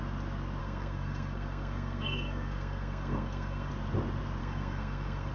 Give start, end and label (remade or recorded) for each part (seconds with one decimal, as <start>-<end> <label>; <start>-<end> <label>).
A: 0.0-0.6 recorded; 0.6-3.7 remade; 3.7-4.4 recorded; 4.4-5.3 remade